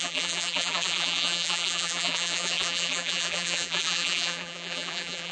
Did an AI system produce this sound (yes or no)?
yes